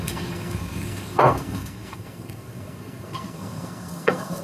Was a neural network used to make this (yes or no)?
yes